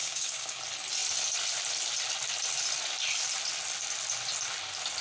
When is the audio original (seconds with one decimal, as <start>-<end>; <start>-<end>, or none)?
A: 0.6-5.0